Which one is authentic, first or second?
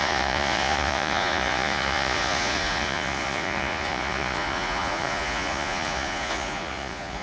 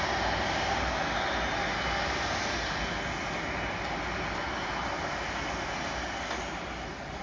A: second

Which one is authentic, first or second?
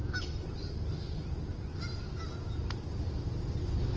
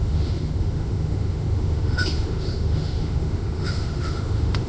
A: first